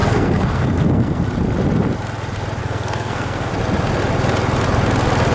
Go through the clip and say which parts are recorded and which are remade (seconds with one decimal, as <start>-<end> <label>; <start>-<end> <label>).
0.0-1.2 remade; 1.2-2.6 recorded; 2.6-3.5 remade; 3.5-5.3 recorded